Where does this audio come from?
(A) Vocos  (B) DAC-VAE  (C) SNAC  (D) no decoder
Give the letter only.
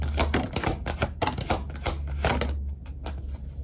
D